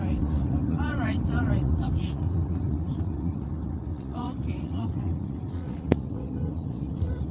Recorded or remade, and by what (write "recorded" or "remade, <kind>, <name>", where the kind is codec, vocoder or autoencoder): remade, vocoder, Vocos